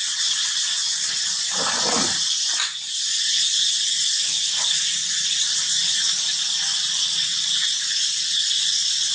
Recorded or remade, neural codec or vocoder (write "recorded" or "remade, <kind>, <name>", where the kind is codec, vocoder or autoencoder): recorded